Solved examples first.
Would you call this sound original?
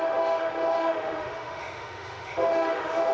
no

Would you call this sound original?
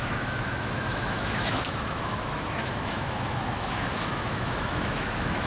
no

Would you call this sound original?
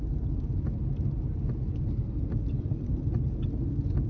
yes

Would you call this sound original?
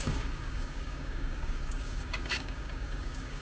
no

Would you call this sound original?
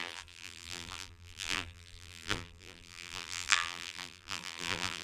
no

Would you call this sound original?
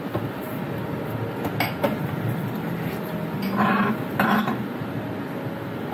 yes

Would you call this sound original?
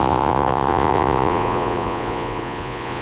no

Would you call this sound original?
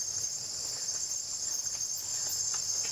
yes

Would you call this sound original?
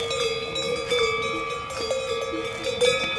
yes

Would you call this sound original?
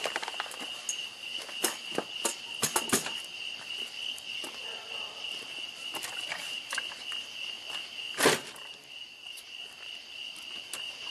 yes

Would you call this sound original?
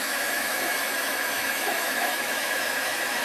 no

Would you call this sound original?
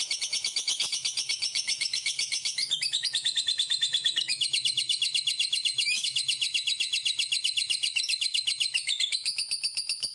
no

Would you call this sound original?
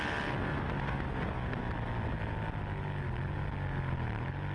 yes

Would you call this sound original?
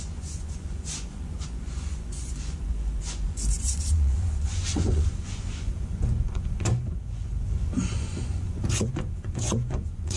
no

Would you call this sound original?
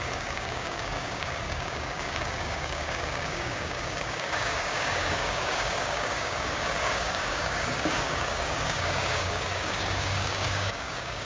no